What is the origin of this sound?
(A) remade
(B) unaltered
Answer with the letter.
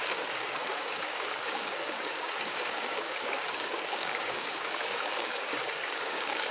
A